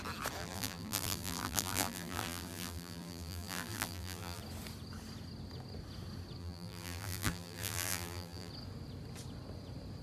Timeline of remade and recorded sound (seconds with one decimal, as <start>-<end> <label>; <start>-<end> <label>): 0.0-0.4 recorded; 0.4-4.4 remade; 4.4-6.4 recorded; 6.4-8.5 remade; 8.5-10.0 recorded